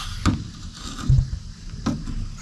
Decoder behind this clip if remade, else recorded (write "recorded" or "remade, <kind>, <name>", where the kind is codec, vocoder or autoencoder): recorded